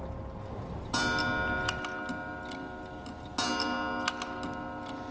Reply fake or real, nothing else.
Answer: real